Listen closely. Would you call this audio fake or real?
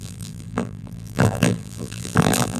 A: fake